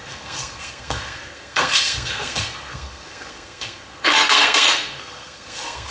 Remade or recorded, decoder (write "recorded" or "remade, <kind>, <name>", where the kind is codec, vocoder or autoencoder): remade, codec, SNAC